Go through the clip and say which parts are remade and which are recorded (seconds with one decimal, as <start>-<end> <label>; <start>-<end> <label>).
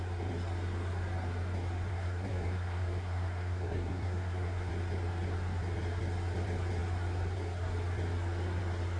0.0-1.9 recorded; 1.9-4.7 remade; 4.7-9.0 recorded